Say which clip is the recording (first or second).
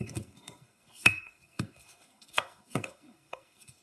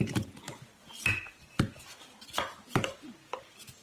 second